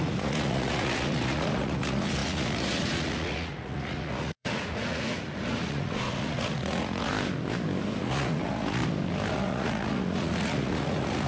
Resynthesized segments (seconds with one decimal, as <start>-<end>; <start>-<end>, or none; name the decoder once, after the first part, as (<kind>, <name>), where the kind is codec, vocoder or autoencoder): 0.0-7.1 (vocoder, Vocos); 8.0-8.8; 9.3-11.3